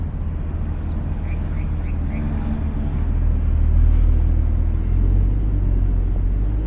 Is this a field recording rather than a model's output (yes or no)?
yes